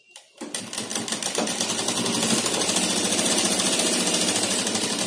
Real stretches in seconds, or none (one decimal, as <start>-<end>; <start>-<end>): 0.0-5.1